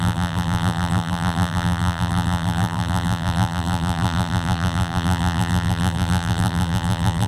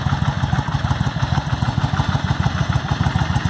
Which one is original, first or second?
second